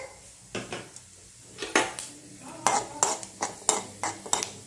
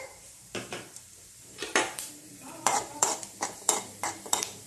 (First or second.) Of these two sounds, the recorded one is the first